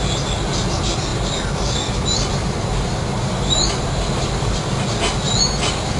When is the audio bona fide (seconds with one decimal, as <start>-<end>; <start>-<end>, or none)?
0.0-2.4; 4.5-6.0